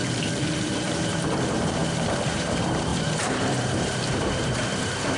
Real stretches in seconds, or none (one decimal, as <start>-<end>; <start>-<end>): 0.0-0.6